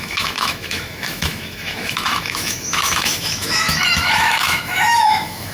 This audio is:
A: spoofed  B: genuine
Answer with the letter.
A